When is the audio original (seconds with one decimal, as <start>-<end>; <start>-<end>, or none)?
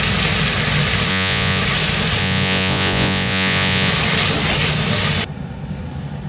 0.0-1.1; 1.6-2.2; 3.9-6.3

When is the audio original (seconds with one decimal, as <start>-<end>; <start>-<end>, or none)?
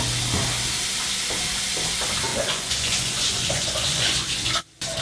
0.0-2.3; 4.6-5.0